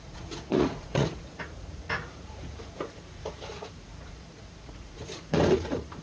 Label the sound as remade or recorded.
remade